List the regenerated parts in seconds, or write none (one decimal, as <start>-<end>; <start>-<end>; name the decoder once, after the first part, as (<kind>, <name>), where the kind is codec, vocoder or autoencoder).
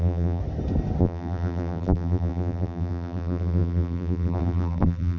0.0-0.4 (vocoder, BigVGAN v2); 1.0-5.2